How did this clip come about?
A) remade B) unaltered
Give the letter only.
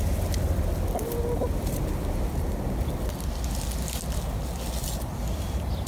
B